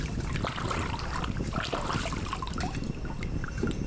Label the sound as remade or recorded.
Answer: recorded